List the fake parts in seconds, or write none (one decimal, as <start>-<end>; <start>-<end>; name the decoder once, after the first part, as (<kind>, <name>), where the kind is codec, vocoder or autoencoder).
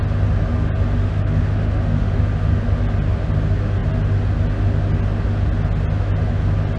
1.0-2.2 (autoencoder, DAC-VAE)